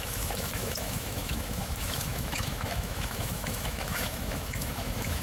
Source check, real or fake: fake